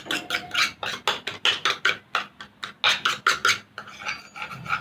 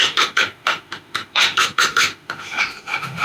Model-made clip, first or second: second